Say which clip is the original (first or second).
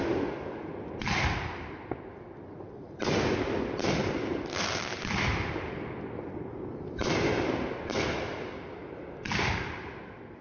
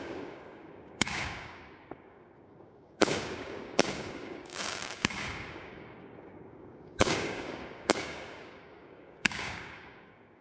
first